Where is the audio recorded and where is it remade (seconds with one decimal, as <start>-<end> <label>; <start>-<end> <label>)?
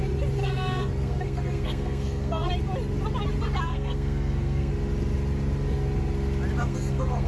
0.0-0.4 recorded; 0.4-2.5 remade; 2.5-3.7 recorded; 3.7-4.7 remade; 4.7-6.6 recorded; 6.6-7.3 remade